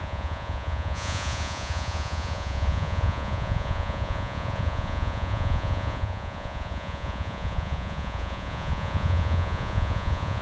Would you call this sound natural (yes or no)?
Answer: no